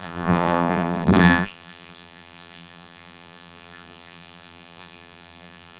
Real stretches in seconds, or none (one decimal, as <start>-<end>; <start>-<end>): none